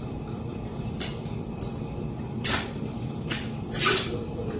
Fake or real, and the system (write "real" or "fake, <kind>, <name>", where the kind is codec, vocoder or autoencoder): fake, vocoder, BigVGAN v2